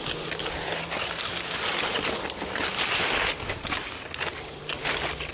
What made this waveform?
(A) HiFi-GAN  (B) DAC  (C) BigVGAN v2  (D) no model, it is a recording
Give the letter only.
D